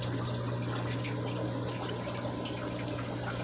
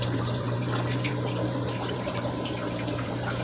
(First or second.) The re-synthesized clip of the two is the second